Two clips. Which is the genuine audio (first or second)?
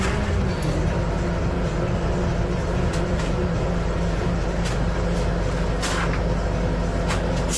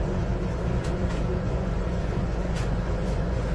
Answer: first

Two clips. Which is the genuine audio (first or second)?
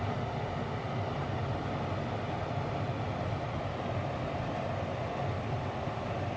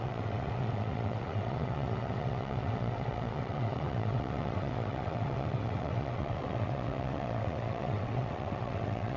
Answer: first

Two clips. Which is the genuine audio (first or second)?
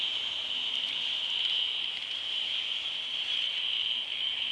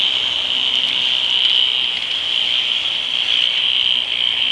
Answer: second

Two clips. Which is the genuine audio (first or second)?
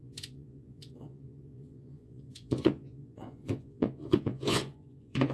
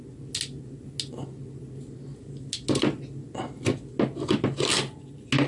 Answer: second